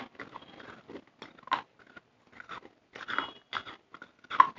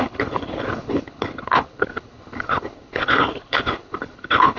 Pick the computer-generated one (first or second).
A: second